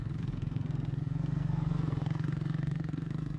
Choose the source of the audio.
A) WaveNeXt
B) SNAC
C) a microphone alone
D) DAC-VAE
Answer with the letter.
B